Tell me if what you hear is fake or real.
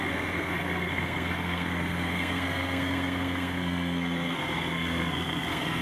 fake